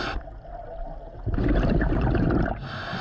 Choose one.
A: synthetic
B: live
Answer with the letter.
B